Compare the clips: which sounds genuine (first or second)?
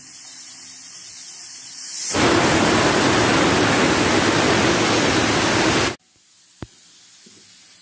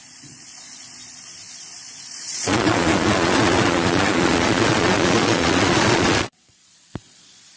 first